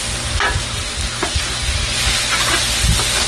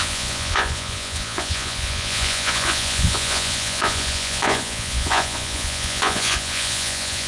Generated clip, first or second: second